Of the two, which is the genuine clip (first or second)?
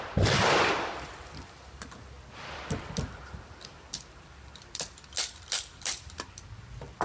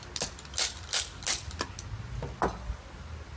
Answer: second